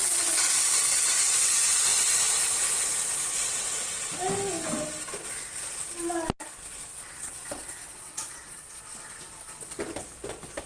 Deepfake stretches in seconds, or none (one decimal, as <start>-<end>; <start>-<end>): 0.0-1.3; 6.9-8.8